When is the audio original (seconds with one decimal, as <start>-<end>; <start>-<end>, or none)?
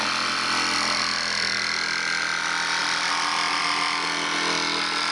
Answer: 0.0-5.1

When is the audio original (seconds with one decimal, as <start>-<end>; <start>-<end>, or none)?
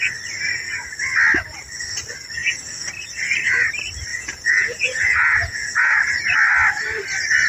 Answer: 0.0-2.4; 2.9-4.1; 6.0-7.5